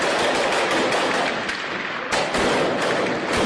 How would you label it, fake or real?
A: real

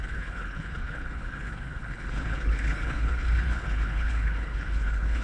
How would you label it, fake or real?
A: fake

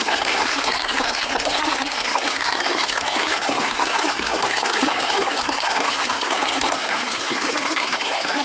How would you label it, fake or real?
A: fake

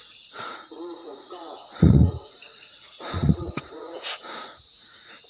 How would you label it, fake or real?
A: fake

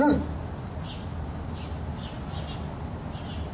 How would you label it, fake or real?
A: real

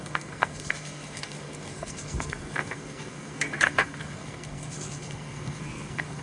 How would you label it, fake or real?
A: fake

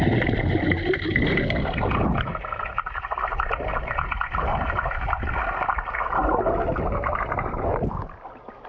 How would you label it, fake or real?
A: real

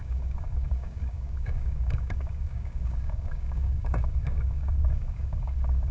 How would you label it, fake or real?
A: fake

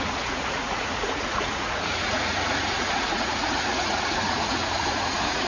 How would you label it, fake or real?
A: fake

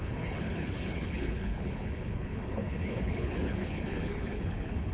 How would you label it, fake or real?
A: fake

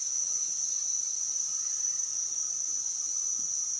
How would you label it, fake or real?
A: real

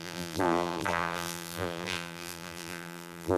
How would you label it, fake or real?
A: fake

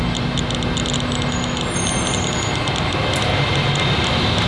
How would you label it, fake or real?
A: real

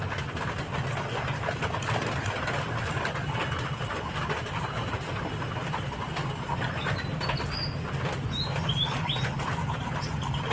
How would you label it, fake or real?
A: real